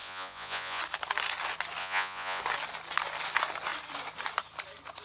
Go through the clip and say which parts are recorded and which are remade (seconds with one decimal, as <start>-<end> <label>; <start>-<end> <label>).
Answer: 0.0-0.8 remade; 0.8-1.8 recorded; 1.8-2.4 remade; 2.4-5.0 recorded